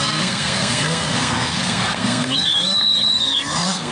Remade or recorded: remade